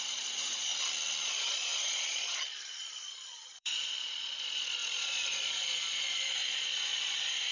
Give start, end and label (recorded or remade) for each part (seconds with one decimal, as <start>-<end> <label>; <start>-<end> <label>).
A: 0.0-0.7 remade; 0.7-1.2 recorded; 1.2-7.5 remade